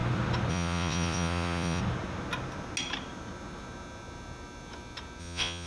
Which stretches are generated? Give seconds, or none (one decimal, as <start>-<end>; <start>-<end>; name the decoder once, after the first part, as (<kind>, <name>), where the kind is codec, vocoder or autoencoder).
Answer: 0.5-1.8 (vocoder, Vocos); 5.2-5.7